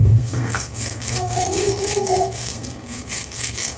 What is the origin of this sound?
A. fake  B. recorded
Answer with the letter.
A